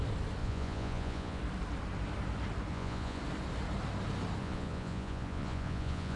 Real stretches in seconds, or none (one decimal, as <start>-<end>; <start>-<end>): 0.0-0.4; 1.4-2.7; 3.2-4.4